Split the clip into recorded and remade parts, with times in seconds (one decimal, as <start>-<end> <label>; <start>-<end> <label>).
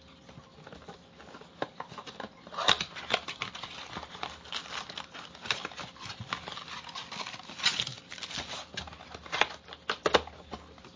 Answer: 0.0-11.0 recorded